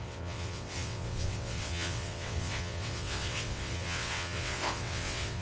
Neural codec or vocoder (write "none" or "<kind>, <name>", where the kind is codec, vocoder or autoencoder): vocoder, WaveNeXt